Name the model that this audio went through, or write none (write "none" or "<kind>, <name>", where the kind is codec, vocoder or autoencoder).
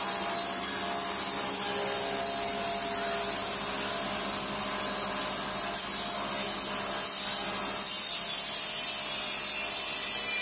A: none